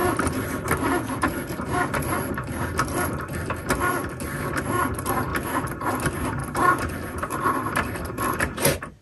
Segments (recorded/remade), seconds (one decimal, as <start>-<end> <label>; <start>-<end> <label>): 0.0-9.0 recorded